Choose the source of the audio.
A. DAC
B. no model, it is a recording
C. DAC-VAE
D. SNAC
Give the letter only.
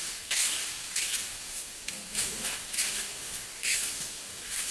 A